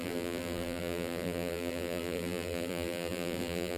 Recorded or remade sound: remade